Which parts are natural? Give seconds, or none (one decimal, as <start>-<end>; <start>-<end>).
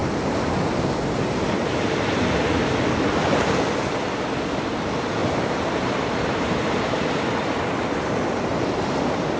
2.9-5.2; 7.5-9.4